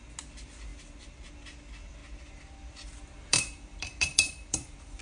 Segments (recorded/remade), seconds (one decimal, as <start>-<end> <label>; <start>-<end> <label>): 0.0-3.3 recorded; 3.3-5.0 remade

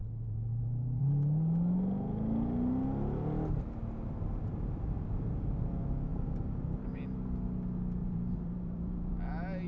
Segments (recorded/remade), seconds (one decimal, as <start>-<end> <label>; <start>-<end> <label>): 0.0-1.0 remade; 1.0-6.1 recorded; 6.1-7.0 remade; 7.0-8.0 recorded; 8.0-9.1 remade; 9.1-9.7 recorded